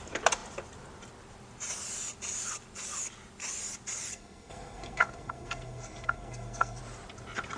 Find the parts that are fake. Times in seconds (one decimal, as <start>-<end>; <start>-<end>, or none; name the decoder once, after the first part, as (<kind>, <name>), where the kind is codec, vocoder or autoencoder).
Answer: 4.1-6.8 (codec, SNAC)